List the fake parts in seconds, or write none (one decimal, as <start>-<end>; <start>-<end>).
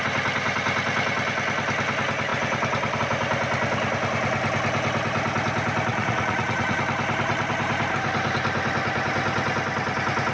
5.9-6.8